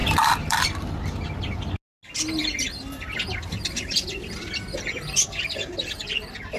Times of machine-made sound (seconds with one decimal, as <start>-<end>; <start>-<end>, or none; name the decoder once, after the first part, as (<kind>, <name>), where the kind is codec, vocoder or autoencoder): 0.0-1.6 (vocoder, BigVGAN v2)